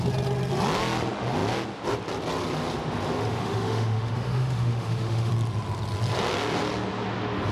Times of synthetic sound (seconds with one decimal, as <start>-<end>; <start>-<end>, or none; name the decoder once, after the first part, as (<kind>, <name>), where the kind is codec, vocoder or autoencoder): 3.3-5.3 (autoencoder, DAC-VAE)